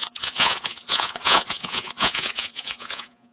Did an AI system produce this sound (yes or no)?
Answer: yes